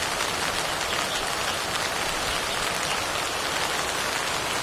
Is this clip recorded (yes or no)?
yes